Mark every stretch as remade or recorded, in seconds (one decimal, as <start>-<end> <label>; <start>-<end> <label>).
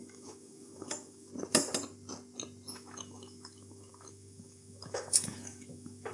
0.0-1.3 remade; 1.3-2.7 recorded; 2.7-6.1 remade